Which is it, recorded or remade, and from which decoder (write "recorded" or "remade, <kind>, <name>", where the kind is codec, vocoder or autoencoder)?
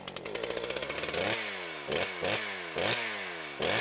recorded